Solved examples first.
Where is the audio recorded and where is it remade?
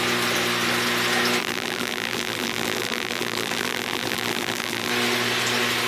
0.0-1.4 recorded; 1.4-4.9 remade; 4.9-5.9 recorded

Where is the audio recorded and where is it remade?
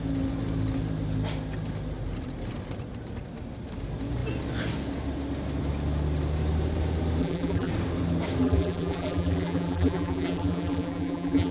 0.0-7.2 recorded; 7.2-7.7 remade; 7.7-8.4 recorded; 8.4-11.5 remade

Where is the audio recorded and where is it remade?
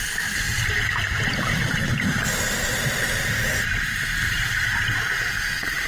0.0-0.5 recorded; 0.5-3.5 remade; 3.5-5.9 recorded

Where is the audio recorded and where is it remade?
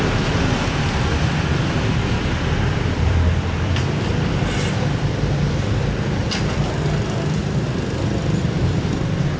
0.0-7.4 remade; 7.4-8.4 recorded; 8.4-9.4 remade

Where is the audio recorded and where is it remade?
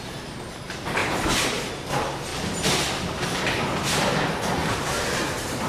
0.0-1.0 recorded; 1.0-1.7 remade; 1.7-4.6 recorded; 4.6-5.3 remade; 5.3-5.7 recorded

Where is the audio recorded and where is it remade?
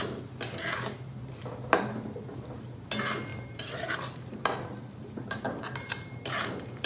0.0-3.3 recorded; 3.3-6.9 remade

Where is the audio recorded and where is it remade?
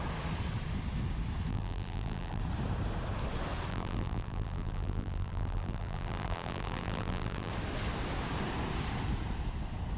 0.0-1.5 recorded; 1.5-2.4 remade; 2.4-3.7 recorded; 3.7-7.5 remade; 7.5-10.0 recorded